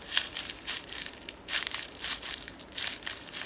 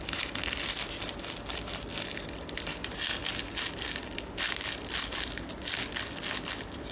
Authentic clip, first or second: second